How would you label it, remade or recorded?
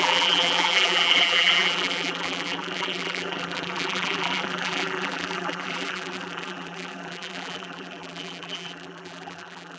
remade